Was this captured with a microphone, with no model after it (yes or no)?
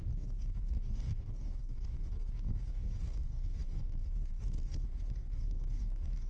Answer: no